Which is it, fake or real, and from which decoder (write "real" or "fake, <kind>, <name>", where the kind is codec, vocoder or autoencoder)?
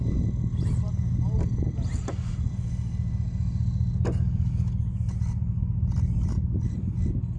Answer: real